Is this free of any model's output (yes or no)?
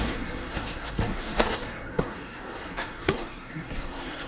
no